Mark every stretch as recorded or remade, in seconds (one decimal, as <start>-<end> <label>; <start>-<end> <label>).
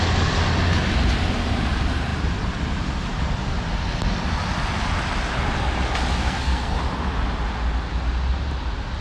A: 0.0-6.2 recorded; 6.2-6.8 remade; 6.8-9.0 recorded